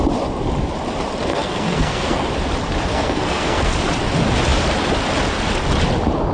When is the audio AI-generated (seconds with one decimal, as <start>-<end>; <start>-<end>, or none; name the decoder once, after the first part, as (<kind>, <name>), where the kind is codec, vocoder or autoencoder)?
1.3-2.3 (codec, SNAC); 2.9-3.7